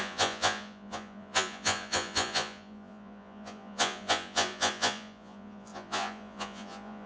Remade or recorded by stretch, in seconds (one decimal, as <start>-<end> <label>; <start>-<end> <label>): 0.0-7.1 remade